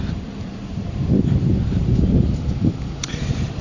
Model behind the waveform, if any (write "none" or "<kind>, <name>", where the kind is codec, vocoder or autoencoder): vocoder, BigVGAN v2